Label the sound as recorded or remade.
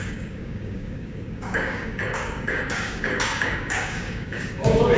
remade